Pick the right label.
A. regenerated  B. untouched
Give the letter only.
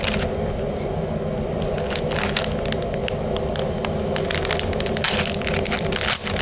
B